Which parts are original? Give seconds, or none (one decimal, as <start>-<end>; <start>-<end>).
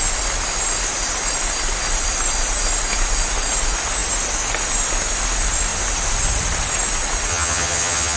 0.0-7.3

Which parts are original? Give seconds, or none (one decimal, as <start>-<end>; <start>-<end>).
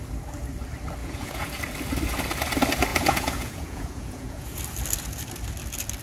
0.0-1.0; 1.6-2.9; 4.6-6.0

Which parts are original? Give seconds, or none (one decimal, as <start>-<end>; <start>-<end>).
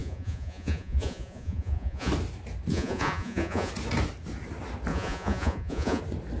2.1-2.7; 3.7-4.9; 6.0-6.4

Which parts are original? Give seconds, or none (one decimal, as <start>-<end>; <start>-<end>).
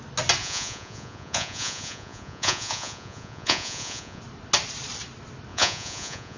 0.0-0.4; 4.2-5.5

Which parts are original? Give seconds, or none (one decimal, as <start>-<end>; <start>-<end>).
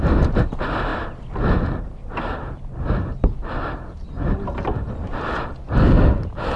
0.0-6.6